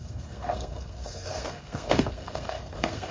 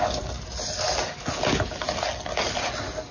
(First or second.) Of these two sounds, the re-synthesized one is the first